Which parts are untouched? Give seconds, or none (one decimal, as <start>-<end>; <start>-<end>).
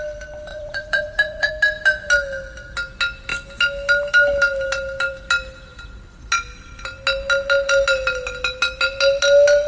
0.0-0.5; 1.5-9.7